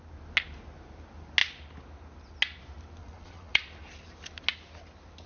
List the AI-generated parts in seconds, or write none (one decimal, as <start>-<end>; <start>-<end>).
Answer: 3.0-3.6